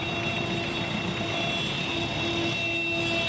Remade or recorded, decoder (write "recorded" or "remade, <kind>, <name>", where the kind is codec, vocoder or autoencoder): recorded